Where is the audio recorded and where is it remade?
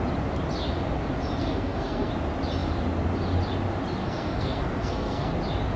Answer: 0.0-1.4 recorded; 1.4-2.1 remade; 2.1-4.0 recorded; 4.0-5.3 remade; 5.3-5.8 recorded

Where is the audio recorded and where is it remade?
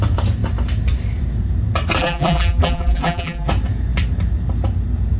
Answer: 0.0-2.0 recorded; 2.0-3.5 remade; 3.5-5.2 recorded